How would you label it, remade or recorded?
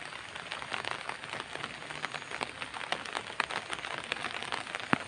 recorded